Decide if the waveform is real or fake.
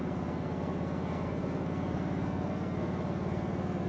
fake